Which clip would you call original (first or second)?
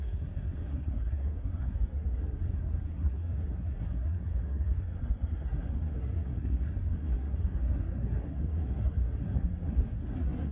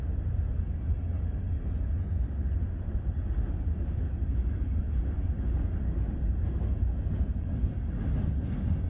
second